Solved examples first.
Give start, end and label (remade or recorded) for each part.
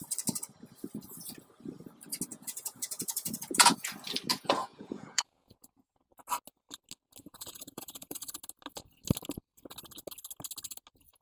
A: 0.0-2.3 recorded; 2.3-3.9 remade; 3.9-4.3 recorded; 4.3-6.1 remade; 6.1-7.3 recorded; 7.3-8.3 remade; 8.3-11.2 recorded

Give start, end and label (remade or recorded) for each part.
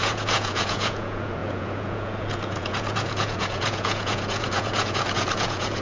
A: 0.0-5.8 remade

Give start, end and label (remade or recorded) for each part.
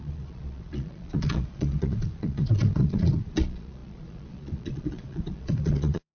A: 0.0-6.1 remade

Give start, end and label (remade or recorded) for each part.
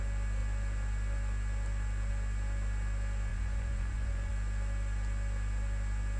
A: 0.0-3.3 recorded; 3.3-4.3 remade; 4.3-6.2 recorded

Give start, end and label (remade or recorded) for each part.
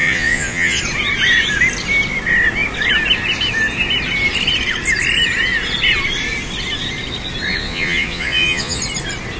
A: 0.0-0.8 remade; 0.8-7.5 recorded; 7.5-8.8 remade; 8.8-9.4 recorded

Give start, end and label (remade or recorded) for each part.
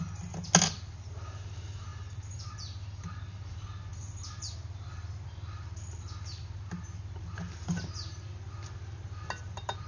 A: 0.0-9.9 recorded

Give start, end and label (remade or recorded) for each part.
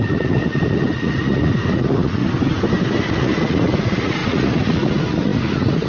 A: 0.0-2.2 remade; 2.2-3.0 recorded; 3.0-5.9 remade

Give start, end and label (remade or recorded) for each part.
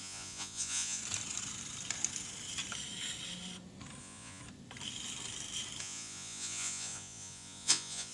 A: 0.0-1.0 remade; 1.0-4.0 recorded; 4.0-4.4 remade; 4.4-5.8 recorded; 5.8-8.1 remade